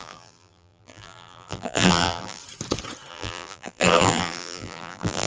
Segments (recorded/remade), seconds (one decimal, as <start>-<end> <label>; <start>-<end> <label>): 0.0-2.4 remade; 2.4-3.1 recorded; 3.1-5.3 remade